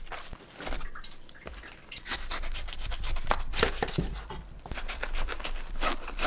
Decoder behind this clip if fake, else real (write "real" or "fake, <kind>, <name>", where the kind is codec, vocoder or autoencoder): real